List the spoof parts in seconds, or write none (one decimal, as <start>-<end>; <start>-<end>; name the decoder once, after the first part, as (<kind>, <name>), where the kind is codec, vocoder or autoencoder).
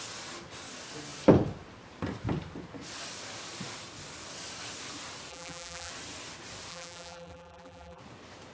5.3-5.9 (vocoder, BigVGAN v2); 6.7-8.0